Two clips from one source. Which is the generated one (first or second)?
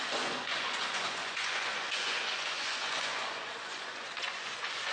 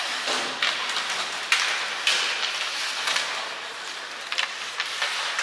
first